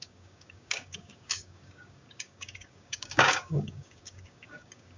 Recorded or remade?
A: remade